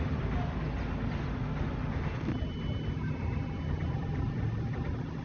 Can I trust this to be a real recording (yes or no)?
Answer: yes